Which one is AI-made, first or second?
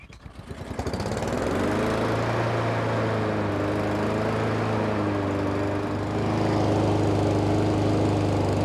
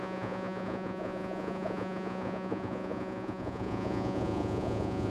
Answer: second